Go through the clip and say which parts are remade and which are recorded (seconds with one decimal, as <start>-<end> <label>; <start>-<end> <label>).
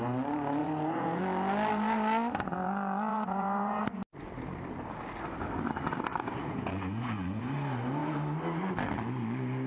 0.0-0.6 recorded; 0.6-1.2 remade; 1.2-3.1 recorded; 3.1-3.8 remade; 3.8-6.1 recorded; 6.1-7.4 remade; 7.4-9.7 recorded